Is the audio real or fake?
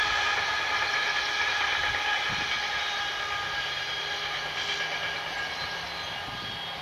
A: real